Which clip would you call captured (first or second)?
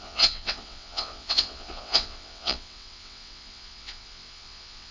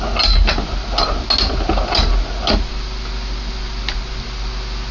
second